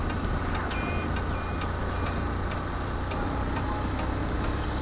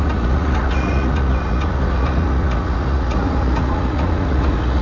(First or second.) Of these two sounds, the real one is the first